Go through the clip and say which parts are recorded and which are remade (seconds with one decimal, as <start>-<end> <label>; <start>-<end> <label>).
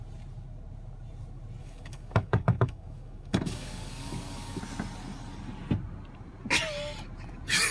0.0-1.6 recorded; 1.6-4.6 remade; 4.6-7.7 recorded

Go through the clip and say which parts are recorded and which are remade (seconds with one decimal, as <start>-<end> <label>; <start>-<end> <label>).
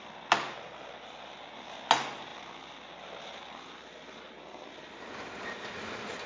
0.0-6.3 recorded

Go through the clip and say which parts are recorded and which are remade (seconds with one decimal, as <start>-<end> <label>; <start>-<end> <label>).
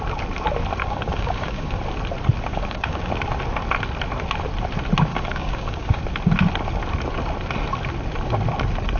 0.0-0.8 recorded; 0.8-1.8 remade; 1.8-2.5 recorded; 2.5-3.1 remade; 3.1-5.1 recorded; 5.1-6.0 remade; 6.0-9.0 recorded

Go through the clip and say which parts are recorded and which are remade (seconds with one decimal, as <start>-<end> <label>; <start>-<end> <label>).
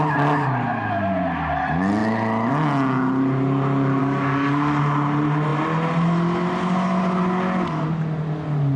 0.0-4.0 recorded; 4.0-4.8 remade; 4.8-8.8 recorded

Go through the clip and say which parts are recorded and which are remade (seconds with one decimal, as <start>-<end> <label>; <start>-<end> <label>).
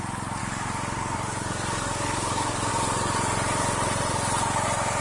0.0-0.4 recorded; 0.4-2.7 remade; 2.7-5.0 recorded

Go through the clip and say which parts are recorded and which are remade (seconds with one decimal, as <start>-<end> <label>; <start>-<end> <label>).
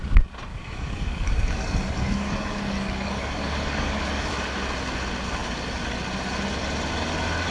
0.0-0.5 recorded; 0.5-4.3 remade; 4.3-7.5 recorded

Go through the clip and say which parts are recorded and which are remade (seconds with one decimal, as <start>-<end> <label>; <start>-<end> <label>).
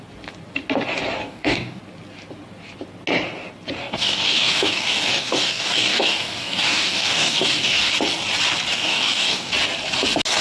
0.0-1.2 recorded; 1.2-1.8 remade; 1.8-3.8 recorded; 3.8-7.9 remade; 7.9-8.7 recorded; 8.7-9.5 remade; 9.5-10.4 recorded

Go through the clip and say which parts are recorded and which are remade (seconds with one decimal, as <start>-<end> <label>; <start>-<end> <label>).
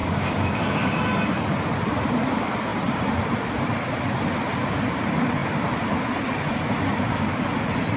0.0-1.0 remade; 1.0-8.0 recorded